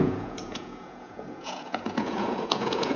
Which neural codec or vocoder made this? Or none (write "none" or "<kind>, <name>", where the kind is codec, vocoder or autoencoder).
vocoder, Vocos